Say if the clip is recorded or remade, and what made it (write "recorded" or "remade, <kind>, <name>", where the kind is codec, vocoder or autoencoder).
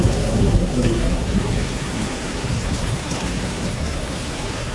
remade, codec, SNAC